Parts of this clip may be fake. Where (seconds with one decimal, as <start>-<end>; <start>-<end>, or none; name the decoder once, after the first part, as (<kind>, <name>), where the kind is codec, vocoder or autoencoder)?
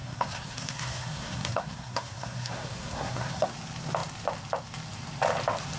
0.0-3.5 (codec, SNAC)